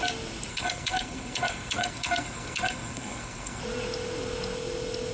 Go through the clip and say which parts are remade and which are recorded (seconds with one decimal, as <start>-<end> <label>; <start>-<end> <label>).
0.0-0.5 recorded; 0.5-3.6 remade; 3.6-5.1 recorded